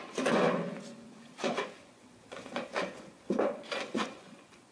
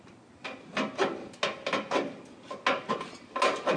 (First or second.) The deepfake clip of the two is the first